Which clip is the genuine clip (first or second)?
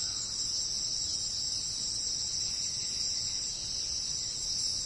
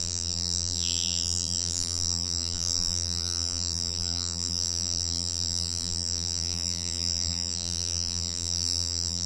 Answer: first